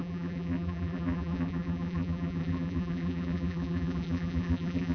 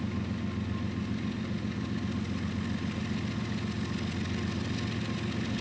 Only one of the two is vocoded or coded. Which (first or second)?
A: first